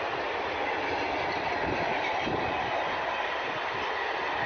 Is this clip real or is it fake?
real